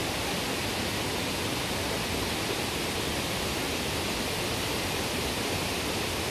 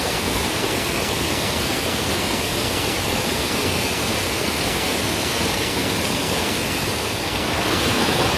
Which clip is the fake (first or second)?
second